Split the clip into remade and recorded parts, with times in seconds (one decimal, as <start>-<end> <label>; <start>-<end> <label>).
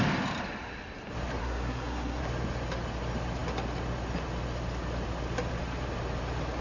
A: 0.0-1.4 recorded; 1.4-2.2 remade; 2.2-6.6 recorded